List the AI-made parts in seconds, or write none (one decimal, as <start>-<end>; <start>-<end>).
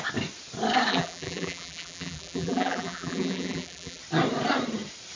0.9-4.0